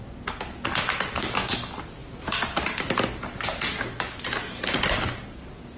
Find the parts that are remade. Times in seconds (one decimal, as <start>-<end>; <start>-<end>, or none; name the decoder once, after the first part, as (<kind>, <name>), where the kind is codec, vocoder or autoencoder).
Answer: none